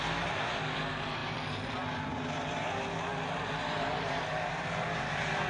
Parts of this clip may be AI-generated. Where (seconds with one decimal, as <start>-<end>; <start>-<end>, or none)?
none